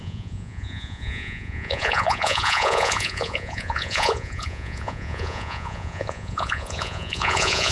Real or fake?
fake